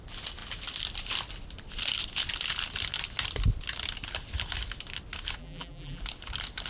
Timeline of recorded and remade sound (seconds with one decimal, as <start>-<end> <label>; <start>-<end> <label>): 0.0-5.4 recorded; 5.4-6.0 remade; 6.0-6.7 recorded